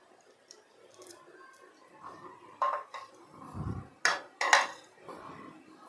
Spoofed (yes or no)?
no